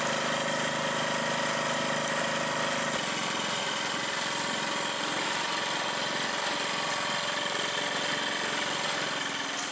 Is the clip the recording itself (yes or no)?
yes